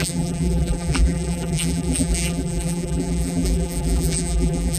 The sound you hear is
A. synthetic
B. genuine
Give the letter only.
A